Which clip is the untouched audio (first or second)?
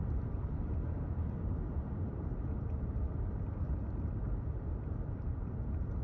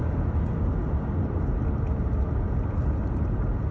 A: second